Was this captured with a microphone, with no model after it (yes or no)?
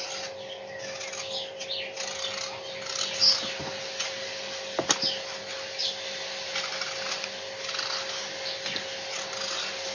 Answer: yes